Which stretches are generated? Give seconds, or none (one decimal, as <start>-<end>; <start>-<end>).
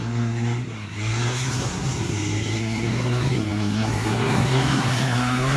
0.0-5.6